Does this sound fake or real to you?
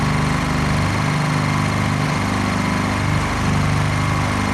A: real